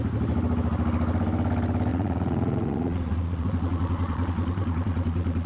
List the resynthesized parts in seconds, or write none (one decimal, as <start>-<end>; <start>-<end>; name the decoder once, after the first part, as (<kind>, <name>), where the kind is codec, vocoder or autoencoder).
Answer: 1.9-5.5 (vocoder, Vocos)